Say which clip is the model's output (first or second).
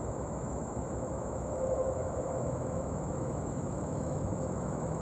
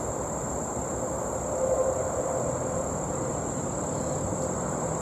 first